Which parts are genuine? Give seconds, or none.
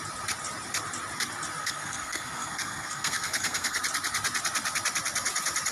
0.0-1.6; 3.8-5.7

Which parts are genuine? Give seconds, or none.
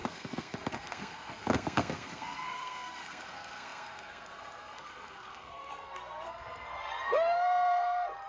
none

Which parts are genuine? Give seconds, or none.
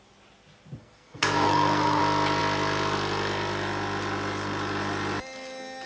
0.0-0.8; 2.0-5.9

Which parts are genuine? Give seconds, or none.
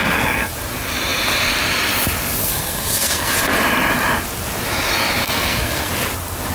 0.5-2.4; 3.3-5.2; 5.9-6.5